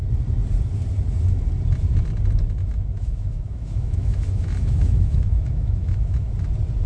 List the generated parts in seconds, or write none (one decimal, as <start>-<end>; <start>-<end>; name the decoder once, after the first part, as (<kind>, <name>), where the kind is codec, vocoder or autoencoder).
2.6-6.3 (autoencoder, DAC-VAE)